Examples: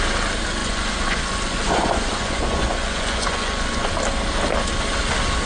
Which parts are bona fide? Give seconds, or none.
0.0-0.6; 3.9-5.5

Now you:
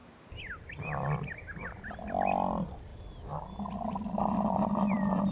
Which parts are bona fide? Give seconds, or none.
0.0-0.5; 2.9-3.7

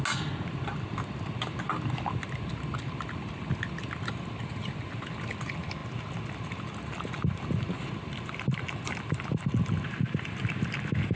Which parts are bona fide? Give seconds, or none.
0.0-11.2